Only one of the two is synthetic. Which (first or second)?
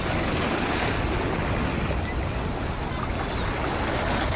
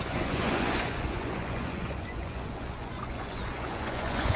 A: second